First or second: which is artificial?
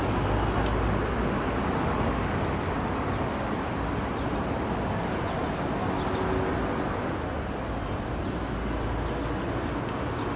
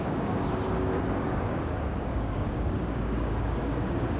second